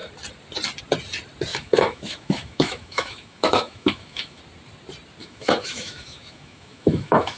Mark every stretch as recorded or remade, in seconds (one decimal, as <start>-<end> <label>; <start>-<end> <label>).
0.0-1.5 recorded; 1.5-4.4 remade; 4.4-5.2 recorded; 5.2-7.4 remade